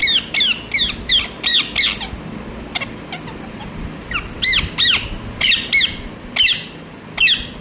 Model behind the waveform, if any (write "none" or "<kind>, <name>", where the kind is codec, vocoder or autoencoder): none